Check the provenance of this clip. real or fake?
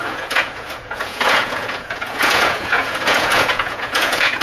fake